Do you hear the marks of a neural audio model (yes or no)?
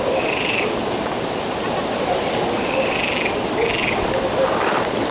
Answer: no